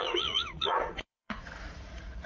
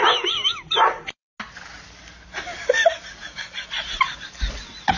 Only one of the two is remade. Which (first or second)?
first